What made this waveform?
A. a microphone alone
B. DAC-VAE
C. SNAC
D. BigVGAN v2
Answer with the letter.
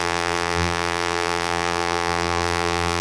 D